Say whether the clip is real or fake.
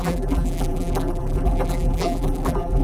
fake